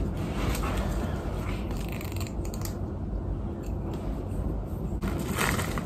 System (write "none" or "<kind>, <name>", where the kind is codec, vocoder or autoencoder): none